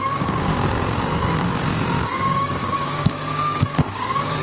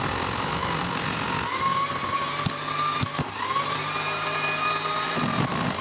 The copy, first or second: first